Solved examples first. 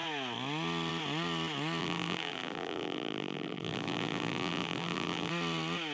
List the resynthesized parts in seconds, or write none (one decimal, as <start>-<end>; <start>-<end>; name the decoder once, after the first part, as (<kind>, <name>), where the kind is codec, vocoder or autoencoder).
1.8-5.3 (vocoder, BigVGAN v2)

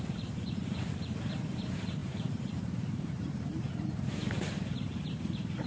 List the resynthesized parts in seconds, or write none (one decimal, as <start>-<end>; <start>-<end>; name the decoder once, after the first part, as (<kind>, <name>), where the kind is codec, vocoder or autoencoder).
0.0-5.7 (vocoder, BigVGAN v2)

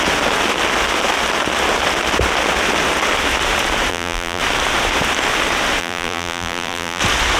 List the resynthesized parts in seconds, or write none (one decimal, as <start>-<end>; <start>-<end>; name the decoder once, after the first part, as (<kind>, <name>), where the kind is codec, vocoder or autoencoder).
3.9-4.4 (vocoder, BigVGAN v2); 5.8-7.0

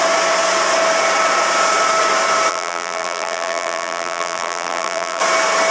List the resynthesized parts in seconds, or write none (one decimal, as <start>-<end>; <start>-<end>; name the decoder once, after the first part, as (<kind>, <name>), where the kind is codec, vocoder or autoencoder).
2.5-5.2 (vocoder, BigVGAN v2)

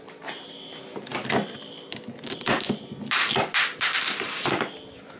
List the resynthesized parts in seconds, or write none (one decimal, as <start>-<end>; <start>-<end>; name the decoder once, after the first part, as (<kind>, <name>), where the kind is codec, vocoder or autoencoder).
3.9-4.7 (vocoder, BigVGAN v2)

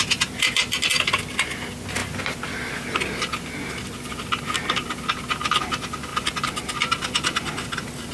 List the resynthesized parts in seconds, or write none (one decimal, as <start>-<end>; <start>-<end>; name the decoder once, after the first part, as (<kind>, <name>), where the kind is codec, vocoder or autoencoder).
none